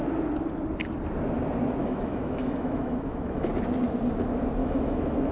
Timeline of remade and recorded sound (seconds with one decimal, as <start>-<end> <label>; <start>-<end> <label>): 0.0-1.8 recorded; 1.8-3.5 remade; 3.5-4.6 recorded; 4.6-5.3 remade